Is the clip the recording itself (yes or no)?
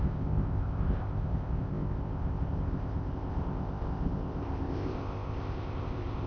no